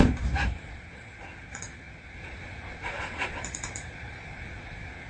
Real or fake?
fake